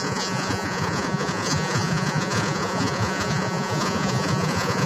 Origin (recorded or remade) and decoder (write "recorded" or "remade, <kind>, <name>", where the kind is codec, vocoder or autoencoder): remade, vocoder, Vocos